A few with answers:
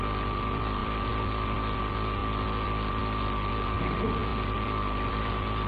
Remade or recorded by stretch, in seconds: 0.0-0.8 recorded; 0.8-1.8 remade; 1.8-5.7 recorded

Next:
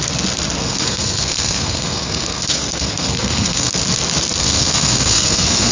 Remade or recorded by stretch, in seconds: 0.0-0.6 recorded; 0.6-3.7 remade; 3.7-4.4 recorded; 4.4-5.7 remade

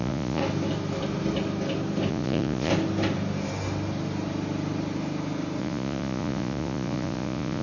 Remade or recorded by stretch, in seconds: 0.0-0.4 remade; 0.4-2.1 recorded; 2.1-2.7 remade; 2.7-5.6 recorded; 5.6-7.6 remade

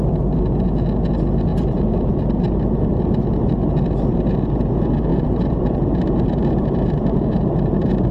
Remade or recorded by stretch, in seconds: 0.0-1.5 recorded; 1.5-2.2 remade; 2.2-5.1 recorded; 5.1-8.1 remade